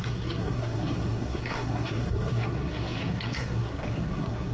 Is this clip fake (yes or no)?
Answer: yes